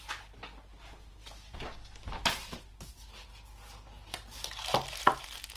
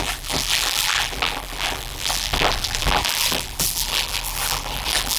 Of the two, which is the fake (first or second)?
second